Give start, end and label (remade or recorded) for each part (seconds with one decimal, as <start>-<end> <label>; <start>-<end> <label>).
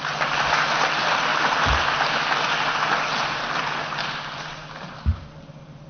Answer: 0.0-5.9 recorded